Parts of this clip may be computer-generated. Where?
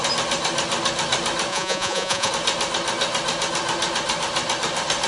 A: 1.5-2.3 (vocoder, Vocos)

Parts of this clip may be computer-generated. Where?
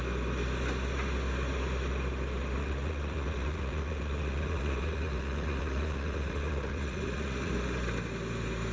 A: 2.6-7.5 (vocoder, Vocos)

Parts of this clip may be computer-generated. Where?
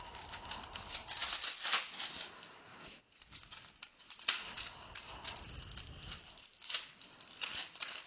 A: 0.0-1.2 (vocoder, BigVGAN v2); 1.9-2.7; 3.2-5.1; 6.4-8.1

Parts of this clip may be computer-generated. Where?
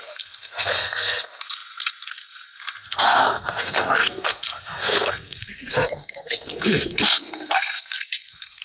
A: 0.0-8.6 (codec, SNAC)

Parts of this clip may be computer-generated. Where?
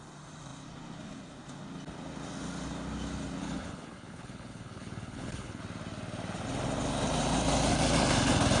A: 3.4-5.6 (codec, HILCodec)